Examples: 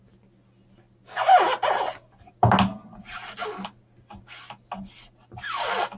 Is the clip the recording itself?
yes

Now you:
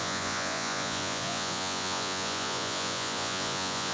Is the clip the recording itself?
no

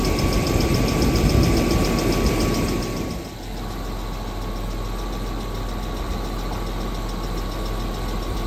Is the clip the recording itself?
yes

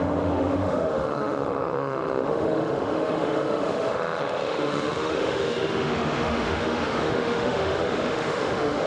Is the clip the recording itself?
no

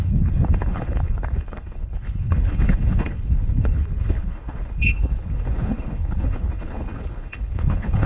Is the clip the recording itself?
no